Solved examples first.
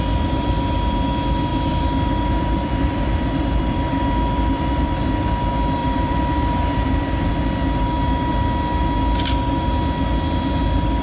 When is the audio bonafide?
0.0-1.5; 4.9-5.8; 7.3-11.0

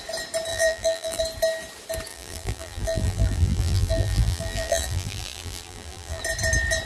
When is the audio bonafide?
0.0-0.5; 1.2-2.1; 6.2-6.9

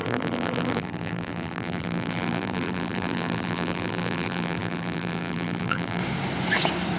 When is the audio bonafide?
6.0-7.0